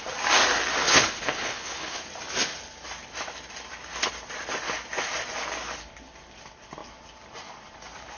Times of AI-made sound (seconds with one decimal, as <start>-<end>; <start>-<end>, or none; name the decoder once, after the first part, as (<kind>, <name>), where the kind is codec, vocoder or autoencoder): 0.8-2.0 (codec, HILCodec)